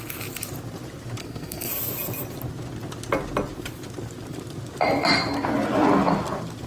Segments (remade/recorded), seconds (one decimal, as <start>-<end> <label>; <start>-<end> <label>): 0.0-1.2 recorded; 1.2-1.7 remade; 1.7-6.7 recorded